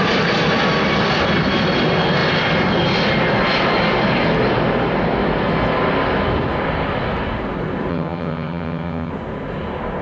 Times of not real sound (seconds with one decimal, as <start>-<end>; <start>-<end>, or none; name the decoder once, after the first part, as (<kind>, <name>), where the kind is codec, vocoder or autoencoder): 7.9-9.1 (vocoder, HiFi-GAN)